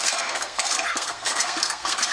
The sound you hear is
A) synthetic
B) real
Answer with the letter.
A